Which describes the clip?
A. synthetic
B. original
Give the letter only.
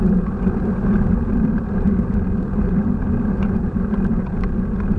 B